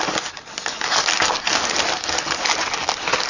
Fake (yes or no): no